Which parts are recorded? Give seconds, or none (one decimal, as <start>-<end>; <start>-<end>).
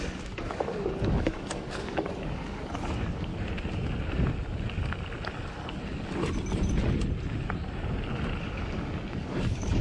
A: 3.3-8.4